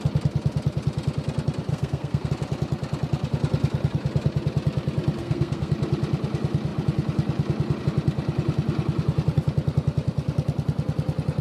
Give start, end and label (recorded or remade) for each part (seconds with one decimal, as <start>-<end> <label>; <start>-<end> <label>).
0.0-1.7 recorded; 1.7-2.3 remade; 2.3-5.2 recorded; 5.2-5.7 remade; 5.7-11.4 recorded